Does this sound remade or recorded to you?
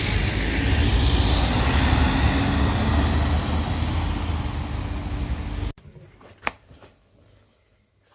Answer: recorded